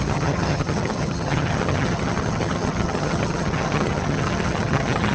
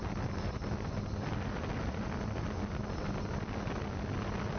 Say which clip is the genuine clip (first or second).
second